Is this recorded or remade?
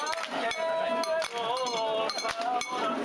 recorded